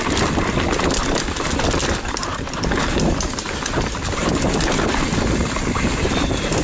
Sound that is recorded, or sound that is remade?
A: recorded